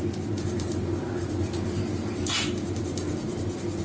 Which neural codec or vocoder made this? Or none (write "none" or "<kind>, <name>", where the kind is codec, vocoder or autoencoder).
none